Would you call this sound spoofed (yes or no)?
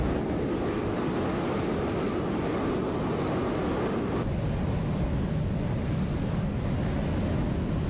no